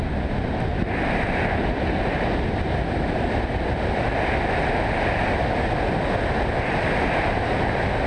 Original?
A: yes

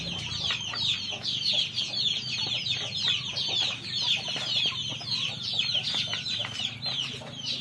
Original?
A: yes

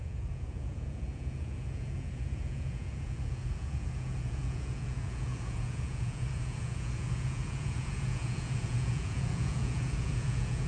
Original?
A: no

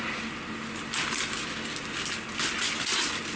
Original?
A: yes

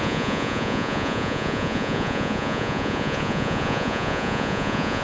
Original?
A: no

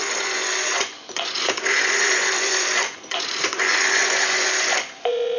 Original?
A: no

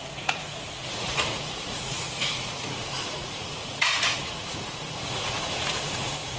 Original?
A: no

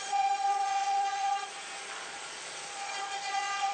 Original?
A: no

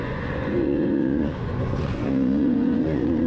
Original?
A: no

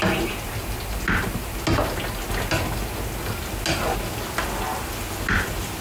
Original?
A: yes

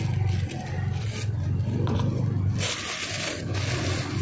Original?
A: yes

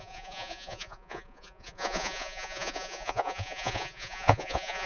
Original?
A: no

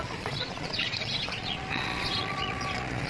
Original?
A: no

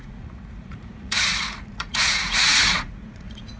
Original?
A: no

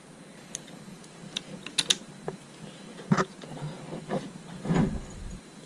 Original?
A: yes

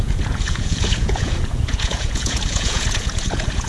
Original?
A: no